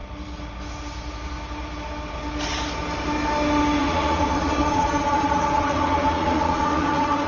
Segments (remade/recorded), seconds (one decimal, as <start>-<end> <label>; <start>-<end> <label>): 0.0-3.8 recorded; 3.8-7.3 remade